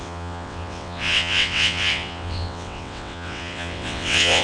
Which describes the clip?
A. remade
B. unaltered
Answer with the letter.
A